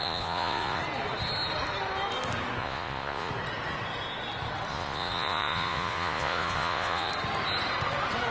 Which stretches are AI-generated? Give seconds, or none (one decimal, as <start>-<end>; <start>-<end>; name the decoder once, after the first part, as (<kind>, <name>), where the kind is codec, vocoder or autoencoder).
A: 0.0-0.8 (vocoder, Vocos); 2.6-3.3; 4.7-7.1